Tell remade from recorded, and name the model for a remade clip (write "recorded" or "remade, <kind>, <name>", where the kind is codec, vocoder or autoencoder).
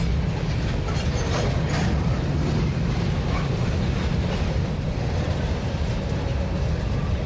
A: recorded